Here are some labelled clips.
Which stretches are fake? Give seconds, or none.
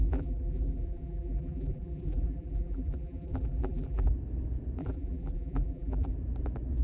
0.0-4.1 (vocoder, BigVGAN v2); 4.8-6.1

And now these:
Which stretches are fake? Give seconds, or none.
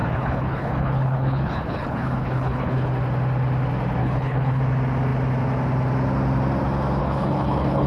0.0-2.9 (codec, HILCodec); 4.0-4.6; 7.0-7.9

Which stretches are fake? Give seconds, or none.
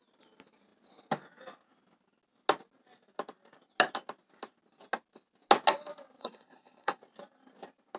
6.2-7.0 (codec, SNAC)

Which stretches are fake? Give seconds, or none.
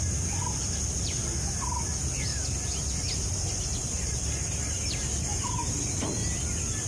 3.8-4.8 (vocoder, BigVGAN v2); 5.6-6.4